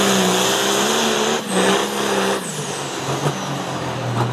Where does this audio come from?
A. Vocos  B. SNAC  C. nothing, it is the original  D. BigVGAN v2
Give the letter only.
C